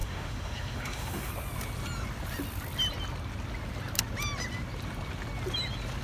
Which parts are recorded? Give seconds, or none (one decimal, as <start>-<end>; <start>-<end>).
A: 1.3-6.0